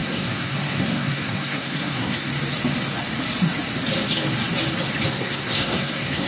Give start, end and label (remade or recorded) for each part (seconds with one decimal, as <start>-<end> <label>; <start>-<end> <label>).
0.0-2.3 remade; 2.3-5.1 recorded; 5.1-6.3 remade